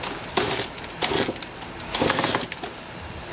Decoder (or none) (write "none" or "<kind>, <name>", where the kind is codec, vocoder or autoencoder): vocoder, BigVGAN v2